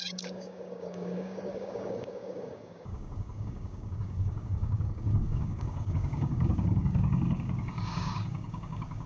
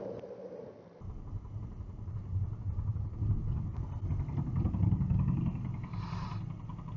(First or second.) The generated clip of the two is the first